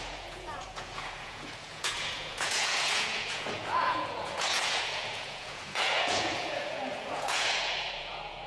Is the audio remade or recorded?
remade